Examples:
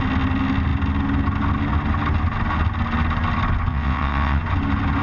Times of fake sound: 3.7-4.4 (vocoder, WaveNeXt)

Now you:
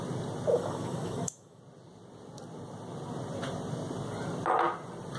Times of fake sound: 0.5-1.6 (autoencoder, DAC-VAE)

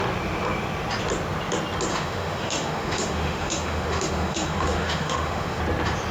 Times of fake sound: 1.9-5.6 (autoencoder, DAC-VAE)

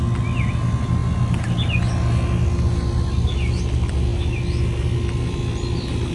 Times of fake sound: none

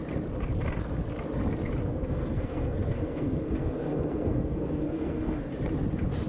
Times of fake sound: 1.9-5.5 (codec, SNAC)

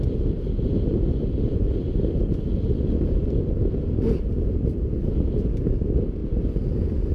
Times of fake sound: 0.9-4.0 (vocoder, BigVGAN v2)